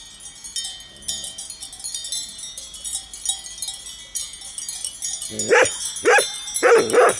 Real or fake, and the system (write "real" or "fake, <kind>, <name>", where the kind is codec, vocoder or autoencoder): real